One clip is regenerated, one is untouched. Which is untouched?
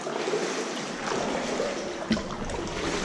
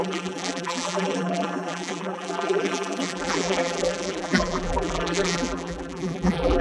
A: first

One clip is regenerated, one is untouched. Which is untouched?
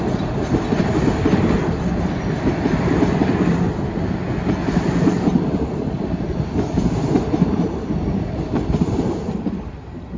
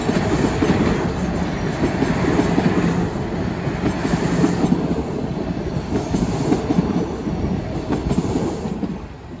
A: second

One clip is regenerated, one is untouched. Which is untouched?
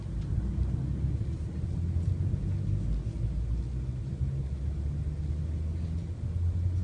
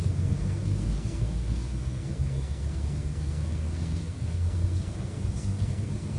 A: first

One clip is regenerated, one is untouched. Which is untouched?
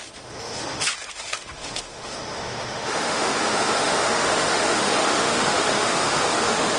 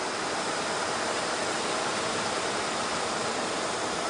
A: second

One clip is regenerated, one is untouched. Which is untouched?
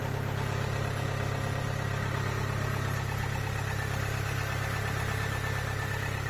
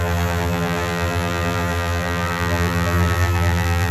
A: first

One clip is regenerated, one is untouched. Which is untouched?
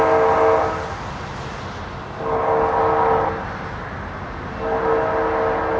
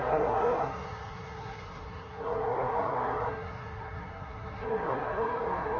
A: first